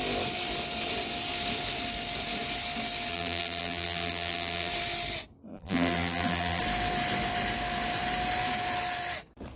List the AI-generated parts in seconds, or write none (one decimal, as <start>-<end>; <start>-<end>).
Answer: 3.1-4.7; 5.5-6.6